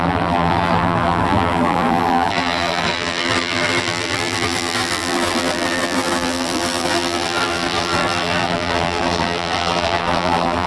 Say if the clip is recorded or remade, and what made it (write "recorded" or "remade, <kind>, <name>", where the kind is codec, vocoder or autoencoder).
remade, vocoder, BigVGAN v2